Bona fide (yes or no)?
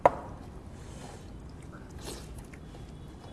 yes